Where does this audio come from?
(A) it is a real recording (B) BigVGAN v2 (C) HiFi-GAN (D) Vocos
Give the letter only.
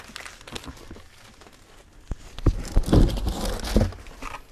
A